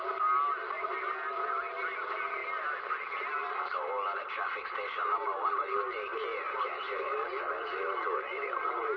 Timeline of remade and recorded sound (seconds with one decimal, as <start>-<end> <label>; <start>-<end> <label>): 0.0-9.0 recorded